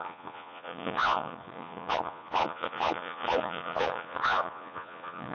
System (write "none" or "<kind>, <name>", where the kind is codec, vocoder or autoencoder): vocoder, Vocos